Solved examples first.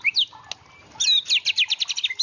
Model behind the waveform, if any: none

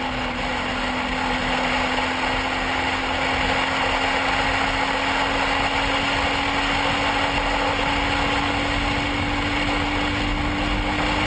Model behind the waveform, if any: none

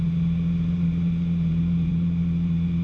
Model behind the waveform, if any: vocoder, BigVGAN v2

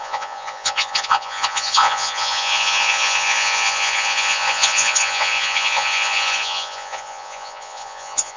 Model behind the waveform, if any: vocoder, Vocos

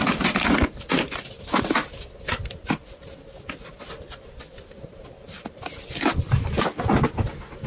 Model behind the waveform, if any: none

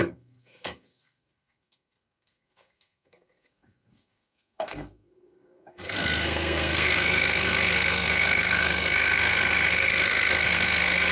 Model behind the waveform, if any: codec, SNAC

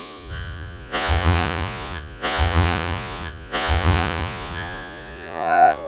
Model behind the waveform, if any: vocoder, Vocos